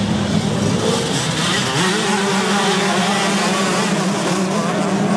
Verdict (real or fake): real